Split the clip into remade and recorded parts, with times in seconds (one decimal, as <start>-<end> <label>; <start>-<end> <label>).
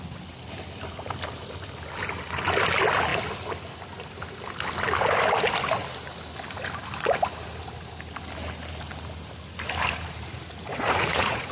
0.0-10.7 recorded; 10.7-11.5 remade